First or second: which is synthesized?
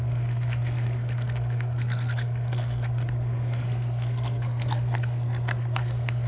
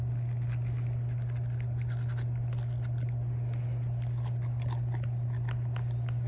first